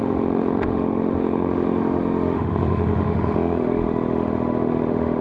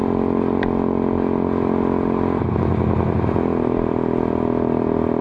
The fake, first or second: first